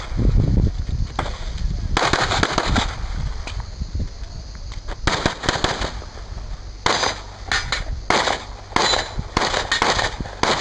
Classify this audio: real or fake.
real